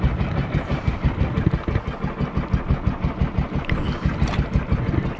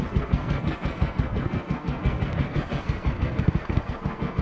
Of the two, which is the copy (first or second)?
second